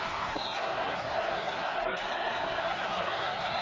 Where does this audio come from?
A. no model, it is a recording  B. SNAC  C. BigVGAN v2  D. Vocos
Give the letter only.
B